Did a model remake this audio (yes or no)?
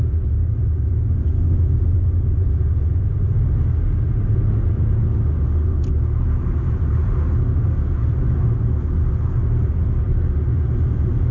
no